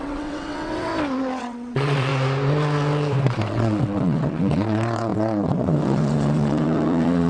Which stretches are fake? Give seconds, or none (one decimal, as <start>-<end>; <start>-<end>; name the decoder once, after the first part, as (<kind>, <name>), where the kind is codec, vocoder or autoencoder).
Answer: 0.0-0.9 (vocoder, WaveNeXt); 1.4-2.1; 3.2-7.3